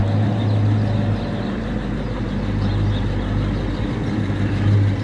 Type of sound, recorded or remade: recorded